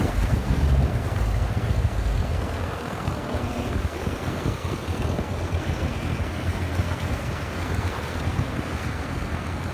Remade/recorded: remade